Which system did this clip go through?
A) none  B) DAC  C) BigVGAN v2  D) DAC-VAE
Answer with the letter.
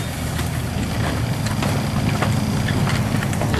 A